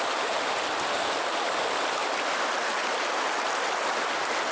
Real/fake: real